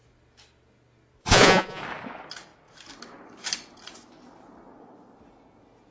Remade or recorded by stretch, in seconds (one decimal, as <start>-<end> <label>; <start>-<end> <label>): 0.0-1.2 recorded; 1.2-1.8 remade; 1.8-5.9 recorded